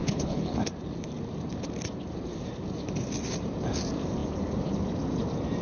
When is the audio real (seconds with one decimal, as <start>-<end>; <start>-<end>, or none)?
0.6-5.6

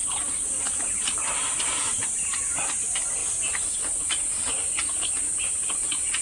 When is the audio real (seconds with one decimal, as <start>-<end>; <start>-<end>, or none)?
0.0-6.2